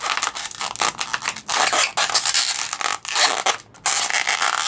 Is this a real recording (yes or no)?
yes